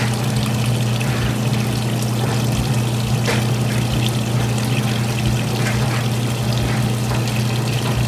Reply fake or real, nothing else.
real